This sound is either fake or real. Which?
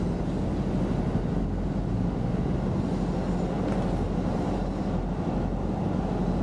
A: real